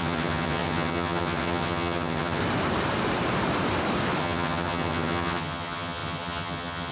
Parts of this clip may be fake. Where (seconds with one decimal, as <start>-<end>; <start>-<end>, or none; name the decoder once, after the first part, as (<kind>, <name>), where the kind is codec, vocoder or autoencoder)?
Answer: 0.0-2.4 (vocoder, HiFi-GAN); 4.2-6.9